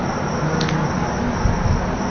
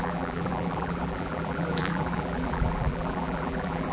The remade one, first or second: second